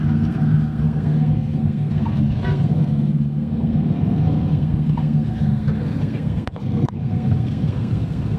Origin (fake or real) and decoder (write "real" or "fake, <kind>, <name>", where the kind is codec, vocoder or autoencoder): fake, codec, SNAC